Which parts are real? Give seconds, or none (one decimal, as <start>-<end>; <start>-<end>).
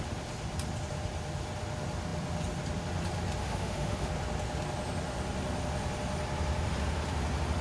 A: 0.0-3.4; 4.1-7.6